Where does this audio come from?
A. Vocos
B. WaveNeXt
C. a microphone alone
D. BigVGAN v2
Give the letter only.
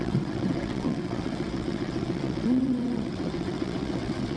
B